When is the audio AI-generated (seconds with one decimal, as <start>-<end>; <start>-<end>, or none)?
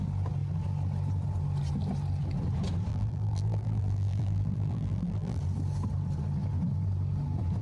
2.9-5.4